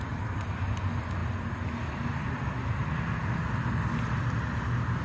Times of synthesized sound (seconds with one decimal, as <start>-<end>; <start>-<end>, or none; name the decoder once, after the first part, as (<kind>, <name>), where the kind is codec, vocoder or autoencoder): none